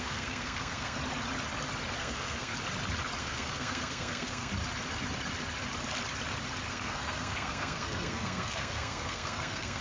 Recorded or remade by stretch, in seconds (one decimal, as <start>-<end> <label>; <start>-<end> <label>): 0.0-1.0 remade; 1.0-2.0 recorded; 2.0-2.5 remade; 2.5-3.2 recorded; 3.2-4.5 remade; 4.5-6.7 recorded; 6.7-9.8 remade